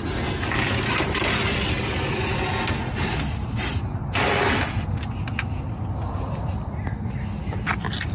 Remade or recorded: recorded